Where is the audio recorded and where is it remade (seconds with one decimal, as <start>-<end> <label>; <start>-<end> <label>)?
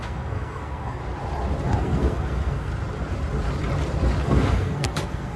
0.0-1.0 remade; 1.0-1.8 recorded; 1.8-2.7 remade; 2.7-4.2 recorded; 4.2-5.4 remade